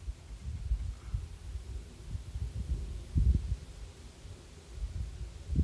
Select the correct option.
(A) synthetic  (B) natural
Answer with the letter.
B